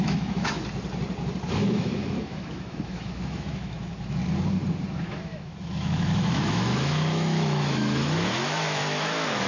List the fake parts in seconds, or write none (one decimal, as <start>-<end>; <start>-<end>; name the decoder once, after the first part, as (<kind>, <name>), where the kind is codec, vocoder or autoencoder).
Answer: 0.0-0.6 (autoencoder, DAC-VAE); 1.5-4.2; 5.0-9.5